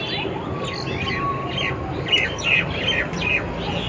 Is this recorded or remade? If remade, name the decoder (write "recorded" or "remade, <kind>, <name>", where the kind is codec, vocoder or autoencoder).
recorded